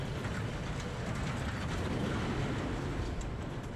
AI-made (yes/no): no